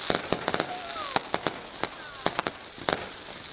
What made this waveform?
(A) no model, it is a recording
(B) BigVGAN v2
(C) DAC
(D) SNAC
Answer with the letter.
A